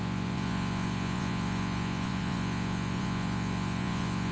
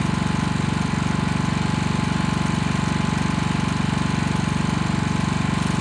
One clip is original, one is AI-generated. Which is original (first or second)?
second